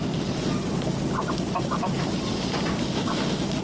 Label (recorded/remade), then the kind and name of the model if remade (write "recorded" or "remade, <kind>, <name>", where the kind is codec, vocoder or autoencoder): recorded